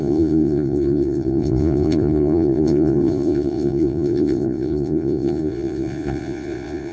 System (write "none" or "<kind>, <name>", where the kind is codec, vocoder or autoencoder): vocoder, Vocos